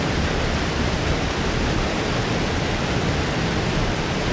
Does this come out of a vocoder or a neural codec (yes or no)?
no